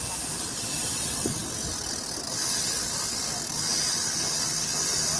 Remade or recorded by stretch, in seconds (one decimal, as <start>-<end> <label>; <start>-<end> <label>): 0.0-5.2 recorded